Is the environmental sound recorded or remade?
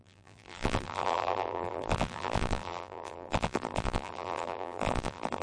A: remade